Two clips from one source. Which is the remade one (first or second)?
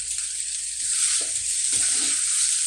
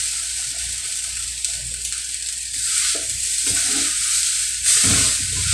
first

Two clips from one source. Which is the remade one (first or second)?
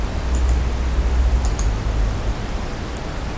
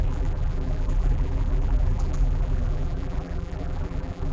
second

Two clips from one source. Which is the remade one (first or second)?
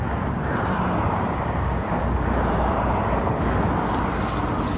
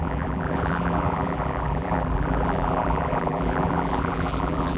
second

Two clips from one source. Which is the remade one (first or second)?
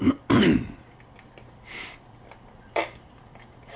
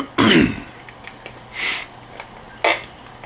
first